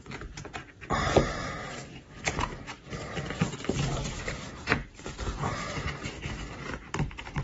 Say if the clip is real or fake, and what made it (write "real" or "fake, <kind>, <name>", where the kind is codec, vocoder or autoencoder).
fake, vocoder, BigVGAN v2